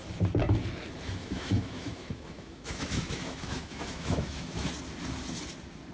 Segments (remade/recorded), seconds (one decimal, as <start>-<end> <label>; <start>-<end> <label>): 0.0-1.2 recorded; 1.2-4.7 remade; 4.7-5.9 recorded